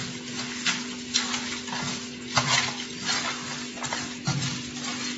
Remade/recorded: recorded